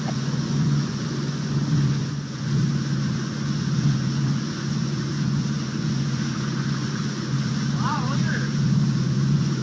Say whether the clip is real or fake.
fake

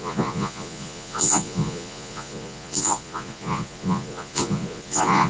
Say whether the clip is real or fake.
fake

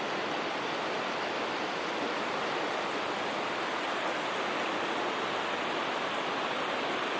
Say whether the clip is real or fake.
real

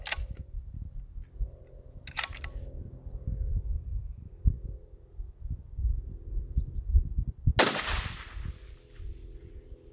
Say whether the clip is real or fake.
real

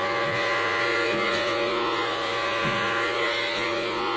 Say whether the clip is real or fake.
fake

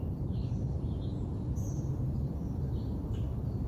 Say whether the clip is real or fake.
fake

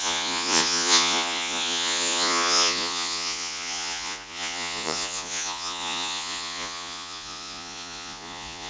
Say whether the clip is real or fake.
fake